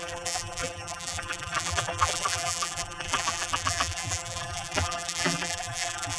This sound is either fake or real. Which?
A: fake